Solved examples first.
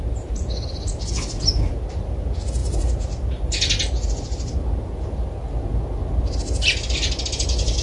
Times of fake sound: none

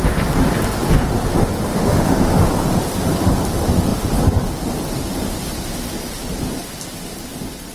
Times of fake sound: 1.7-2.5 (autoencoder, DAC-VAE)

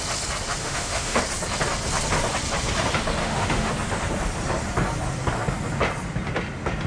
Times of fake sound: 0.6-1.2 (autoencoder, DAC-VAE); 3.2-3.7

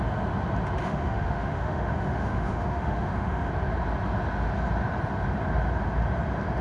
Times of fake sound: 0.8-3.5 (autoencoder, DAC-VAE)

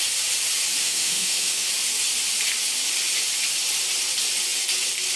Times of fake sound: 0.8-1.7 (autoencoder, DAC-VAE)

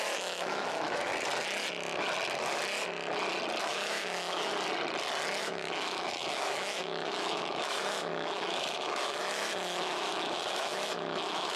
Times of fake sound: 0.0-1.1 (autoencoder, DAC-VAE); 3.6-4.5; 5.4-11.6

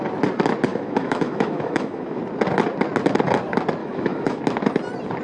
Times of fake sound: 0.7-2.2 (autoencoder, DAC-VAE); 3.8-4.4

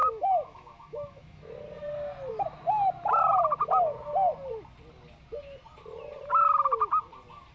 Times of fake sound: 0.0-1.5 (autoencoder, DAC-VAE)